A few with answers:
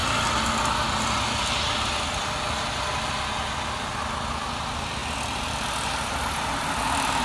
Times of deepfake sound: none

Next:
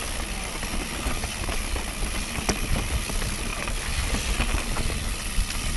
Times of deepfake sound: none

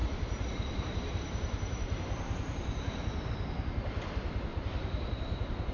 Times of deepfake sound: 0.0-3.3 (vocoder, BigVGAN v2); 4.5-5.7

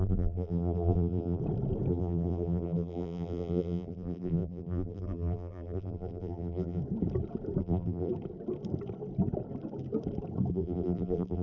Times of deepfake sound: 0.0-1.4 (vocoder, BigVGAN v2); 1.9-6.8; 7.6-8.1; 10.5-11.4

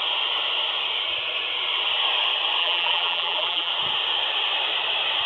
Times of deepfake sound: 2.6-3.7 (vocoder, BigVGAN v2)